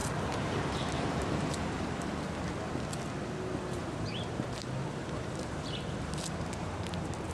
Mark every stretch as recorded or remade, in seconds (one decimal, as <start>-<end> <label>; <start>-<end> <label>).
0.0-2.1 remade; 2.1-3.8 recorded; 3.8-7.3 remade